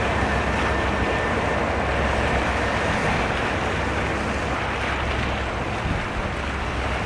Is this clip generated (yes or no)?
no